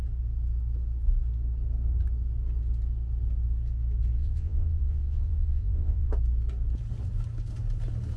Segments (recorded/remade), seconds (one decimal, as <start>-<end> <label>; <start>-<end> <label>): 0.0-4.2 recorded; 4.2-6.1 remade; 6.1-8.2 recorded